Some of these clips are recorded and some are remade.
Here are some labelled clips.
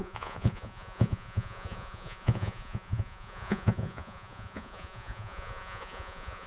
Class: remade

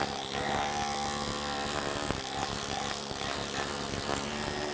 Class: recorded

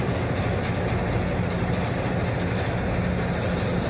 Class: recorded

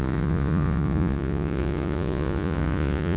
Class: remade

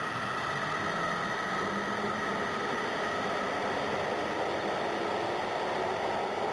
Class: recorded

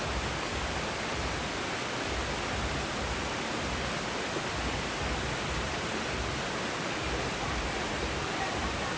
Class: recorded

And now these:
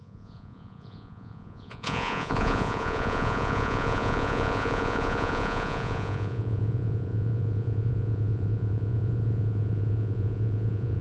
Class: remade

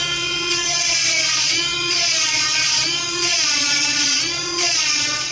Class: remade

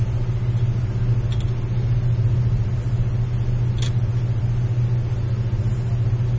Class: recorded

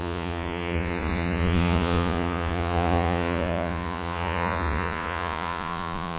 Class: remade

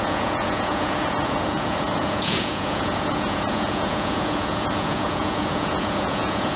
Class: remade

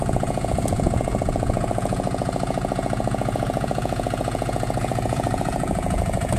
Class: remade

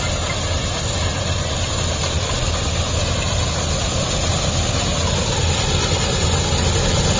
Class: recorded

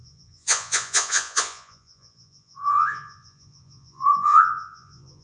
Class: remade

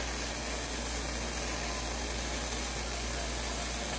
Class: recorded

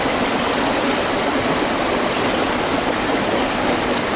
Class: recorded